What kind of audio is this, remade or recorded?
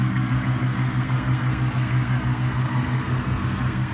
remade